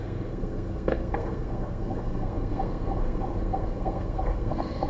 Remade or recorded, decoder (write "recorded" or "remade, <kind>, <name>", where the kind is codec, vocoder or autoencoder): remade, codec, SNAC